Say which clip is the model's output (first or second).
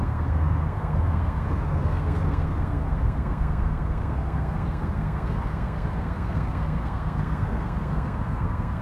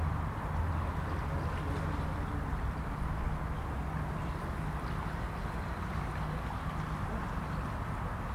first